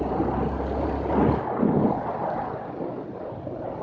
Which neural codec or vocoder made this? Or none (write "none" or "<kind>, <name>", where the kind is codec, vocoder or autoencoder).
none